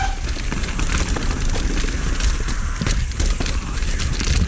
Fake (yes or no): no